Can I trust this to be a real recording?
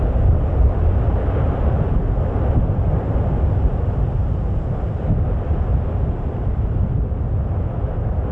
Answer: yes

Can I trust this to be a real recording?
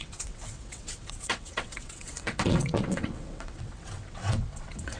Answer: no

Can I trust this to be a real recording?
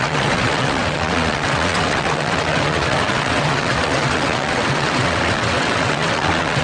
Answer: no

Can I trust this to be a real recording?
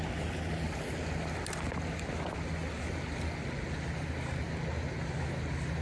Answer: yes